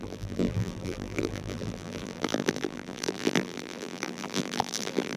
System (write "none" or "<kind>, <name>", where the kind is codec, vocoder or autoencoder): vocoder, BigVGAN v2